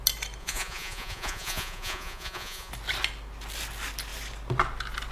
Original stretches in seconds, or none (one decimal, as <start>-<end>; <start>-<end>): 0.0-0.4; 2.7-5.1

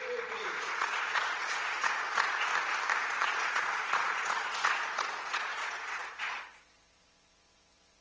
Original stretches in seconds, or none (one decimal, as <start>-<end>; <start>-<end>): 2.5-3.0

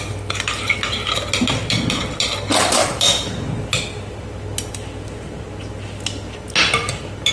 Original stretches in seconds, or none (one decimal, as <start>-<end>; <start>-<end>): 0.0-7.3